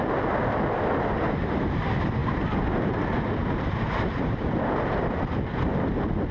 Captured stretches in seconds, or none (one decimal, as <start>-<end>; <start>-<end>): 0.0-3.4; 4.5-6.3

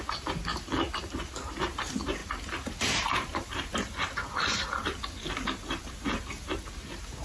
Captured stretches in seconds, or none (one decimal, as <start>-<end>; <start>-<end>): 0.4-1.6